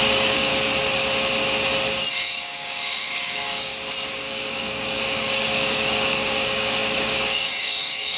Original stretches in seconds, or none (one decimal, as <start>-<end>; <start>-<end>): 0.5-2.1; 3.7-4.3